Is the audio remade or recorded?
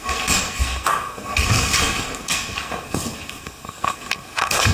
remade